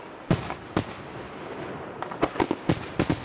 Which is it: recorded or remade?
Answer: recorded